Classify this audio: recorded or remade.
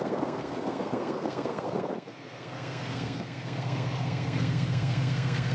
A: remade